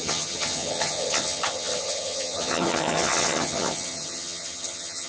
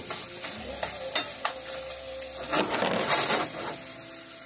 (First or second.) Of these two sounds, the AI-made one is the first